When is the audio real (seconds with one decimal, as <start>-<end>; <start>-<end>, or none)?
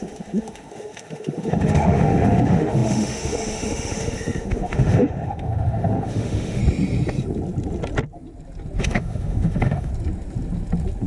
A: 6.6-8.8; 9.9-11.1